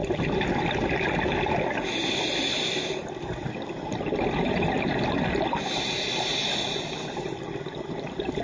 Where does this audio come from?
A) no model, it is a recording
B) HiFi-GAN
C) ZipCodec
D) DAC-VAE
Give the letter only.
A